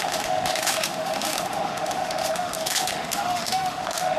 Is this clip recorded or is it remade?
remade